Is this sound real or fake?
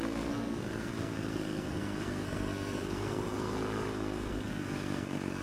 fake